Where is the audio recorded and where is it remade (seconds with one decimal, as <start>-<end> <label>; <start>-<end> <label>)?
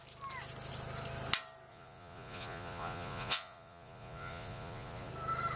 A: 0.0-1.7 recorded; 1.7-5.1 remade; 5.1-5.6 recorded